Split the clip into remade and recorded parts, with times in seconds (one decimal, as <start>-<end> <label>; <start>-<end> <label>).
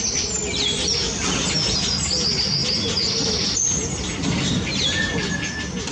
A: 0.0-5.9 recorded